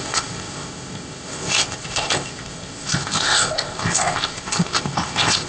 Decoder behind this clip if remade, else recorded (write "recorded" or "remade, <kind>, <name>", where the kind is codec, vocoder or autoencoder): remade, codec, ZipCodec